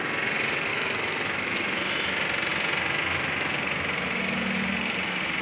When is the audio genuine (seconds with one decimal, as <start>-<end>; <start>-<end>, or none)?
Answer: 0.0-0.7; 1.9-5.4